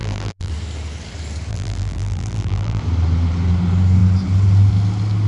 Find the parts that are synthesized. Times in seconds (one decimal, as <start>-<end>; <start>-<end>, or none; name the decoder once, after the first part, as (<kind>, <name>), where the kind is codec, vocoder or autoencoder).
0.0-0.5 (vocoder, BigVGAN v2); 1.5-2.8